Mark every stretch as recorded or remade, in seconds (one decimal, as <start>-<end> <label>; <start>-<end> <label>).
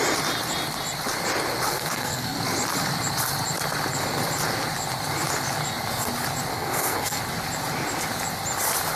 0.0-1.7 recorded; 1.7-2.4 remade; 2.4-6.5 recorded; 6.5-7.2 remade; 7.2-9.0 recorded